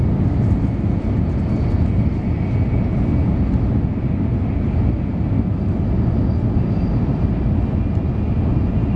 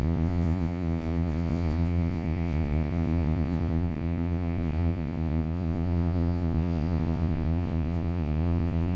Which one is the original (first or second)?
first